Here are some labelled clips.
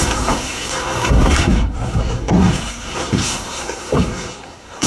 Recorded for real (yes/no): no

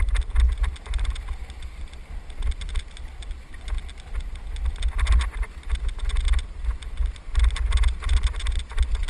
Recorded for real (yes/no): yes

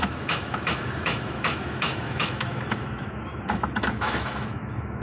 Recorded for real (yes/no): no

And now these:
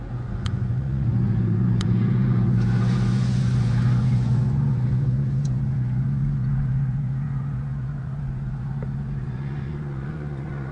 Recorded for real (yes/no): no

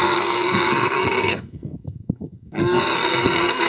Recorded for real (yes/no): no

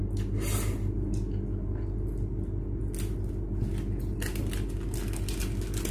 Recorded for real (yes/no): yes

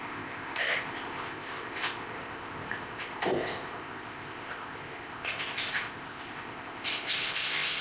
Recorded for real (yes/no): no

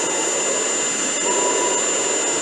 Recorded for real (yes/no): yes